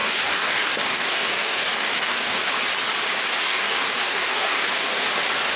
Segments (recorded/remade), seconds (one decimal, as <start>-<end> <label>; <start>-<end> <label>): 0.0-2.5 remade; 2.5-3.4 recorded; 3.4-5.1 remade; 5.1-5.6 recorded

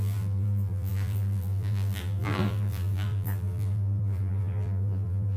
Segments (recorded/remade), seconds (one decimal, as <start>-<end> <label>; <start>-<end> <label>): 0.0-5.4 remade

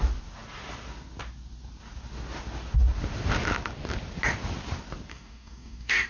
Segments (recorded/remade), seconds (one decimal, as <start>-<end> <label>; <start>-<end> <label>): 0.0-5.1 recorded; 5.1-6.1 remade

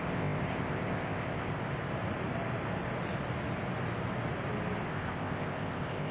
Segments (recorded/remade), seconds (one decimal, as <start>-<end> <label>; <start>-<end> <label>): 0.0-1.5 remade; 1.5-4.9 recorded; 4.9-6.1 remade

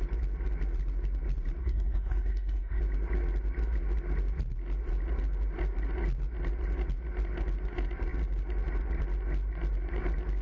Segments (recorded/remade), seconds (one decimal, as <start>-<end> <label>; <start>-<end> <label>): 0.0-1.6 recorded; 1.6-2.8 remade; 2.8-10.4 recorded

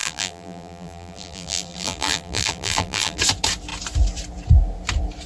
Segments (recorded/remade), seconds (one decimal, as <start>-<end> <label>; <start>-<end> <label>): 0.0-3.2 remade; 3.2-5.3 recorded

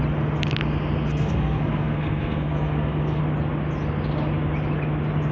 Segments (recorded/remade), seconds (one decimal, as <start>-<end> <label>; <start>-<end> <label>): 0.0-1.1 recorded; 1.1-3.2 remade; 3.2-5.3 recorded

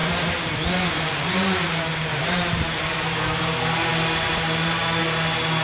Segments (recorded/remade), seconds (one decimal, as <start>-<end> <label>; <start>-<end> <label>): 0.0-3.4 remade; 3.4-5.6 recorded